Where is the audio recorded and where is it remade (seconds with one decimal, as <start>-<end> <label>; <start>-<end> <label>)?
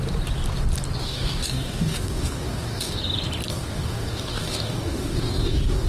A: 0.0-1.0 recorded; 1.0-3.0 remade; 3.0-3.5 recorded; 3.5-5.9 remade